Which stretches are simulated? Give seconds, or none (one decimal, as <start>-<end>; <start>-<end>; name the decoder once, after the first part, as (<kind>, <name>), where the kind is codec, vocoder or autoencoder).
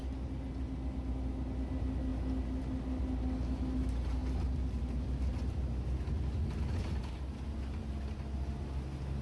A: none